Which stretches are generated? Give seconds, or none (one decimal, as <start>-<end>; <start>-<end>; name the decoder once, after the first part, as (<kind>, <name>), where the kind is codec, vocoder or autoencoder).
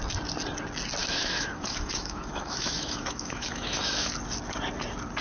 1.0-4.1 (autoencoder, DAC-VAE)